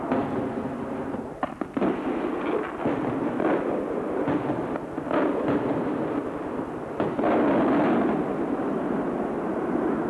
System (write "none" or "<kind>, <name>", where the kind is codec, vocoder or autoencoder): none